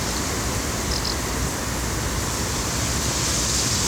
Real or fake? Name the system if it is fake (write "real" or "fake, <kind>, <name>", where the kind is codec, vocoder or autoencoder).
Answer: real